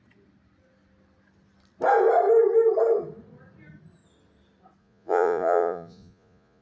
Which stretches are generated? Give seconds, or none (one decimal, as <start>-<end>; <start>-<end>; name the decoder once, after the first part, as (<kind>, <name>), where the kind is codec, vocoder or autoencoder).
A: 4.8-6.6 (vocoder, Vocos)